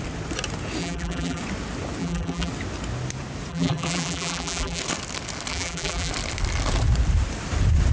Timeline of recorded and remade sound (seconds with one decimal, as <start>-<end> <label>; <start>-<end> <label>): 0.0-0.8 recorded; 0.8-1.4 remade; 1.4-2.0 recorded; 2.0-2.5 remade; 2.5-3.5 recorded; 3.5-4.8 remade; 4.8-5.5 recorded; 5.5-6.1 remade; 6.1-7.9 recorded